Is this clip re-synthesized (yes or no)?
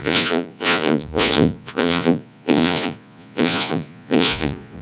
yes